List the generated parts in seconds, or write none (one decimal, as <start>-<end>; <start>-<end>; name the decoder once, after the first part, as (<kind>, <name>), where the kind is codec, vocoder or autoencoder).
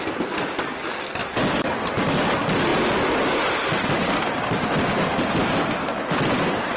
none